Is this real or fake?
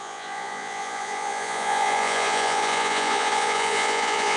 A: fake